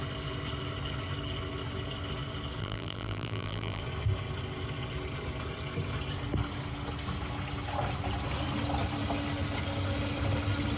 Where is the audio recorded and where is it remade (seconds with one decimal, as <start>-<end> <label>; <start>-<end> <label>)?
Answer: 0.0-2.6 recorded; 2.6-3.8 remade; 3.8-10.8 recorded